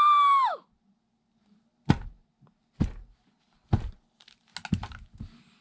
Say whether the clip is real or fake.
real